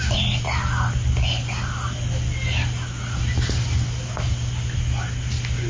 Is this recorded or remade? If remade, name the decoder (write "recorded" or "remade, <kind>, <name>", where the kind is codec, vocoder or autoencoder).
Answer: recorded